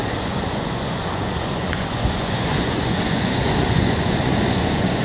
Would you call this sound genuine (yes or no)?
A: no